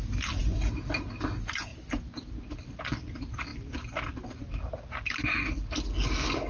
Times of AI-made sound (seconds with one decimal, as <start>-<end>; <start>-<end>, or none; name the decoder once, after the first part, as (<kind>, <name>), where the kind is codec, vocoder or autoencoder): none